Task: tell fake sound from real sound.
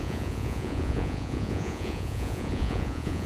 fake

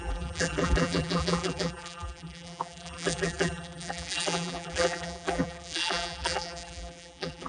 fake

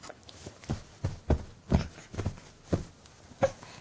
real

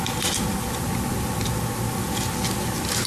real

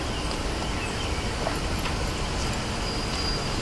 real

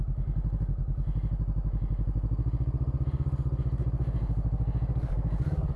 real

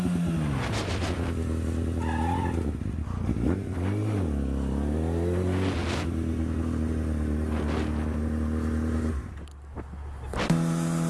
real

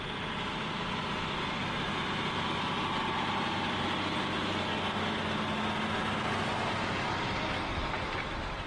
real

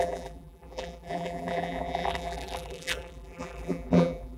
fake